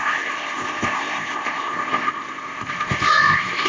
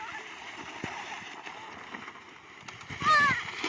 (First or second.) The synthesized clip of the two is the first